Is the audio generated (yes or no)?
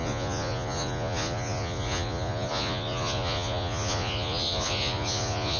yes